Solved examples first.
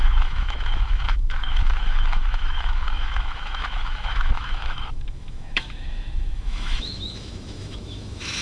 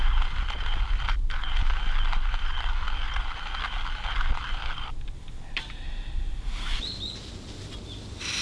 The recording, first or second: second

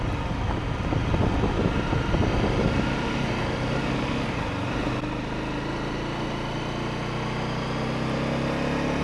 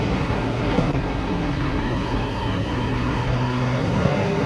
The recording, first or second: first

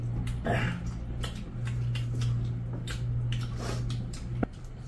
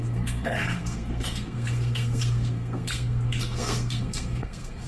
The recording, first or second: first